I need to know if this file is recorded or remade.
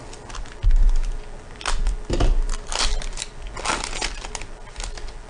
recorded